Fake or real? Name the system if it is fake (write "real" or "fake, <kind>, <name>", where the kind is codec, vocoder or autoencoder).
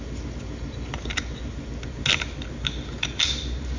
real